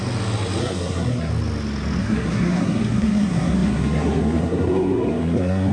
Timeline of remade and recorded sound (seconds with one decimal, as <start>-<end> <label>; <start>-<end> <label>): 0.0-0.6 recorded; 0.6-1.3 remade; 1.3-2.0 recorded; 2.0-5.7 remade